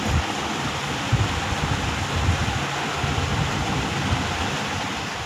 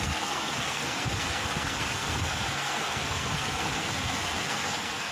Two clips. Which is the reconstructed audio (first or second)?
second